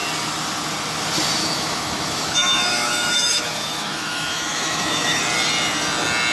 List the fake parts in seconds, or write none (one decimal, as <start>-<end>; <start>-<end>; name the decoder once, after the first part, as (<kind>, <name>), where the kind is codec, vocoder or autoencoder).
1.4-5.2 (autoencoder, DAC-VAE)